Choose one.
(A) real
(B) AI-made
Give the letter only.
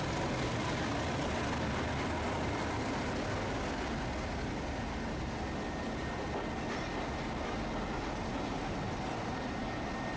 A